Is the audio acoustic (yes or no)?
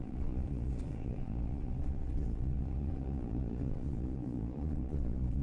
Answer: no